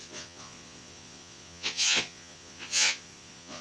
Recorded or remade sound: remade